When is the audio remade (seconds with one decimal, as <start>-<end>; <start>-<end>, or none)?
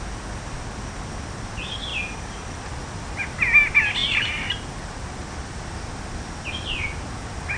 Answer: 1.9-2.7